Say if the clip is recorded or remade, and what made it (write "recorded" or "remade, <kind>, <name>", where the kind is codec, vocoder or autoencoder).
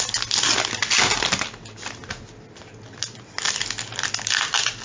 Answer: recorded